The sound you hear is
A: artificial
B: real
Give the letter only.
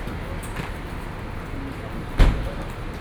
B